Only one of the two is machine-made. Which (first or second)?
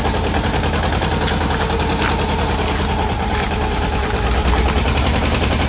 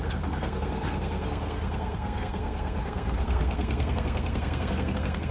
second